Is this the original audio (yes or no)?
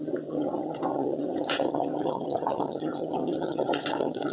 no